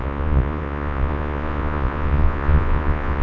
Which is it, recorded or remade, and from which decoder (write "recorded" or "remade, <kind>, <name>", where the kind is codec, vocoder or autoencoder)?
remade, vocoder, Vocos